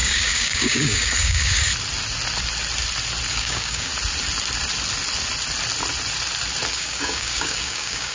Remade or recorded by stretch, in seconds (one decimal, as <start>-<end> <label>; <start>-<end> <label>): 0.0-1.7 remade; 1.7-3.3 recorded; 3.3-3.9 remade; 3.9-6.7 recorded; 6.7-8.1 remade